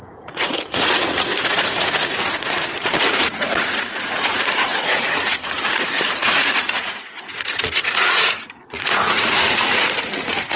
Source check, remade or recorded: remade